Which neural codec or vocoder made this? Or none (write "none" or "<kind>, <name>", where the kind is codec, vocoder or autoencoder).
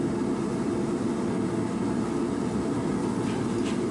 none